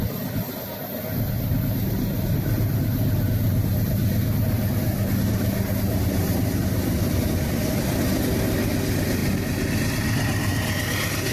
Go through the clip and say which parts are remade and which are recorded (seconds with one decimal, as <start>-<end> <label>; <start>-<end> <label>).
0.0-11.3 recorded